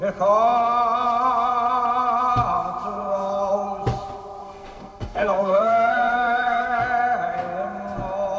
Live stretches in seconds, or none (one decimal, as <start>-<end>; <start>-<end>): 0.0-4.4; 6.8-8.4